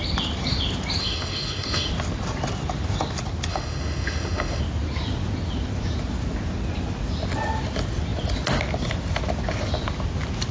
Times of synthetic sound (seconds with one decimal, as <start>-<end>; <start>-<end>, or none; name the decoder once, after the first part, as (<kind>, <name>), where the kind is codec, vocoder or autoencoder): 1.0-1.9 (autoencoder, DAC-VAE); 3.5-4.6